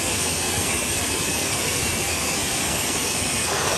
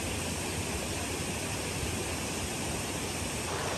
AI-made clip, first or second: first